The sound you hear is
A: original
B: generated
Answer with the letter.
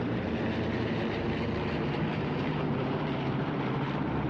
B